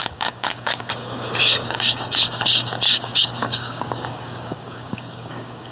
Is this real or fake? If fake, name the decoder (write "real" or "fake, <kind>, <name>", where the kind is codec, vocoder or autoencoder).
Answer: fake, codec, DAC